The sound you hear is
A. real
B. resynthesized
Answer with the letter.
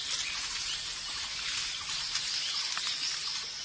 A